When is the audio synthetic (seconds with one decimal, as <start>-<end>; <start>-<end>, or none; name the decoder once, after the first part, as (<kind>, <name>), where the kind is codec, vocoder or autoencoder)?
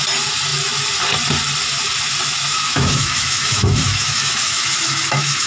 2.5-5.5 (autoencoder, DAC-VAE)